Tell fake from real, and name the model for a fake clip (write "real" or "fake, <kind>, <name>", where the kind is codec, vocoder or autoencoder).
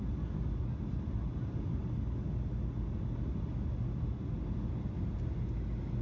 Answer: real